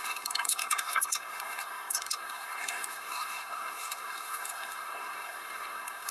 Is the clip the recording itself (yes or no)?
no